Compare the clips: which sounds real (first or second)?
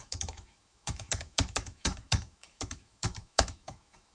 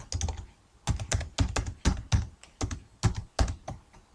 second